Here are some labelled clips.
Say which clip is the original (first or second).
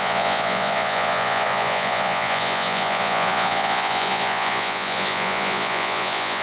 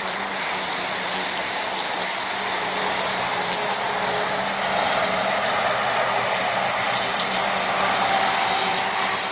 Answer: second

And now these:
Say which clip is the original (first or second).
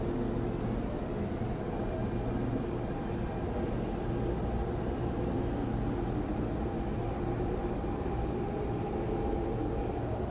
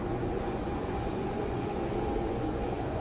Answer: first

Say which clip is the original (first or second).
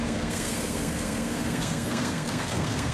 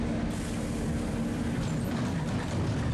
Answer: second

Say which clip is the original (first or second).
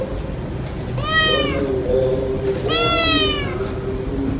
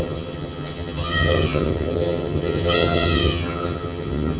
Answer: first